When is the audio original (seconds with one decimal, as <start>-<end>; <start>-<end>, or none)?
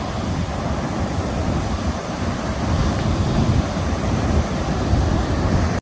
0.0-5.8